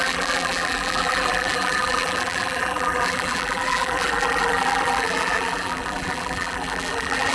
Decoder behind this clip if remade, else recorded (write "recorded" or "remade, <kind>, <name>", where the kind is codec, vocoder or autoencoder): remade, vocoder, BigVGAN v2